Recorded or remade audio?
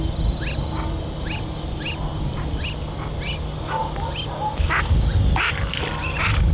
recorded